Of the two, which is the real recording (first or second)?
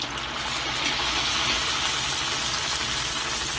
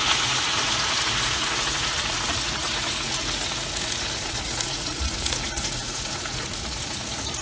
first